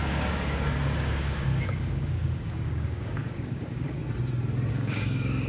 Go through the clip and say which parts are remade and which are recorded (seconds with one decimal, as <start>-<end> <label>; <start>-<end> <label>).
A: 0.0-4.0 remade; 4.0-4.7 recorded; 4.7-5.5 remade